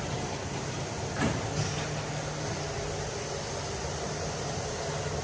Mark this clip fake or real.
real